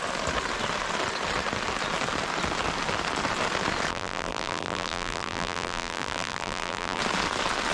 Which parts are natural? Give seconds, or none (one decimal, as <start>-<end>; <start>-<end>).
0.0-3.9; 7.0-7.7